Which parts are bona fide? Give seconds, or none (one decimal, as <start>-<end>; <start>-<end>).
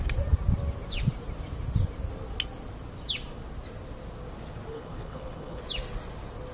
0.0-4.7; 5.6-6.5